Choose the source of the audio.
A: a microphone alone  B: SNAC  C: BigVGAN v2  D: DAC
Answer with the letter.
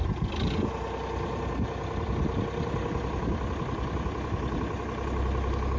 A